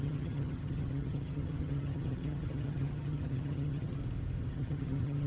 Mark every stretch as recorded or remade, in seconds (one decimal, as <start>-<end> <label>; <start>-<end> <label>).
0.0-4.0 remade; 4.0-4.5 recorded; 4.5-5.3 remade